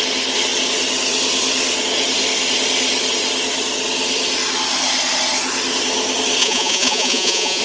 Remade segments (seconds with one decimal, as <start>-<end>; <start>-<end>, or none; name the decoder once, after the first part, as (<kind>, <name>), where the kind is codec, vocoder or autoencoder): 6.4-7.6 (vocoder, Vocos)